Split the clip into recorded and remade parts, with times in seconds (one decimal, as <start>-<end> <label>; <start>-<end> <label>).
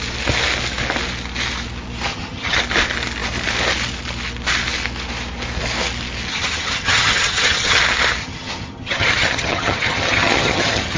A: 0.0-2.1 recorded; 2.1-2.6 remade; 2.6-6.3 recorded; 6.3-7.8 remade; 7.8-8.2 recorded; 8.2-11.0 remade